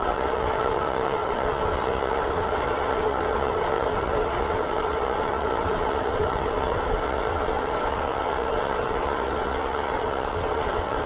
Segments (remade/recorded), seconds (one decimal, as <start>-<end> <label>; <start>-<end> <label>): 0.0-11.1 remade